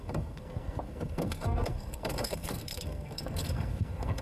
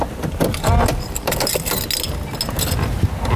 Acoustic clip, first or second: second